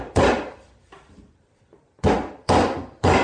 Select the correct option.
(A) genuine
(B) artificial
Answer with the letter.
B